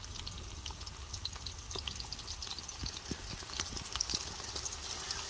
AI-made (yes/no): no